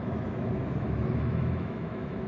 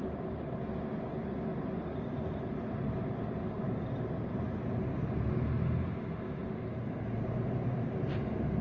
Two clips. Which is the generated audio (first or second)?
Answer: first